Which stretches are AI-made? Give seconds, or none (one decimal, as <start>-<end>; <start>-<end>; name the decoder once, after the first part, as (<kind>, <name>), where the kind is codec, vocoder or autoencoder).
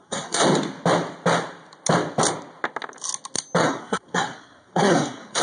0.0-0.4 (codec, SNAC); 3.6-5.4